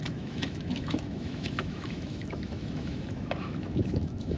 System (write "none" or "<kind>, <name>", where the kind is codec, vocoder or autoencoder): autoencoder, DAC-VAE